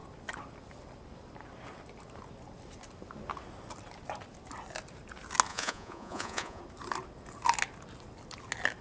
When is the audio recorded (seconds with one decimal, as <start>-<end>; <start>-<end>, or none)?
0.0-5.5; 6.6-8.8